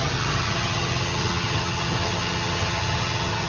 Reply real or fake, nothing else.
fake